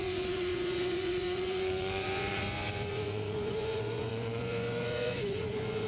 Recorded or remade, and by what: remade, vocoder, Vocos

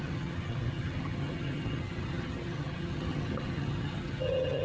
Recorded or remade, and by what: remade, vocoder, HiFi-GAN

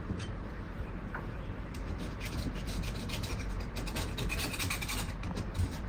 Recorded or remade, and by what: remade, vocoder, BigVGAN v2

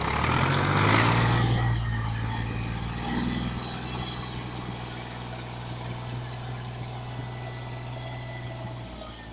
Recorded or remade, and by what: recorded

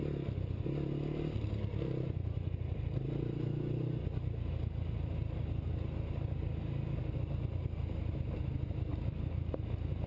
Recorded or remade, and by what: recorded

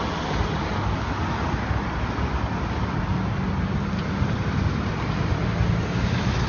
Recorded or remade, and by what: recorded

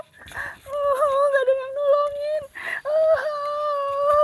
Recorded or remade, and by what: recorded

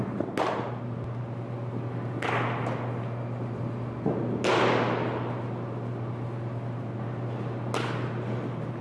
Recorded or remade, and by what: recorded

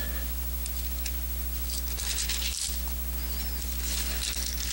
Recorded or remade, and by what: recorded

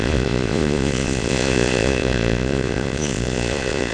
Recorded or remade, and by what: remade, vocoder, Vocos